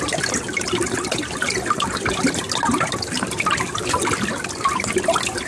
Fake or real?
real